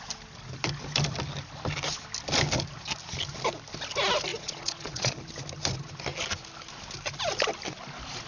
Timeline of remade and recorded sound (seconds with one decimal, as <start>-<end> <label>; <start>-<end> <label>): 0.0-4.3 recorded; 4.3-5.2 remade; 5.2-8.3 recorded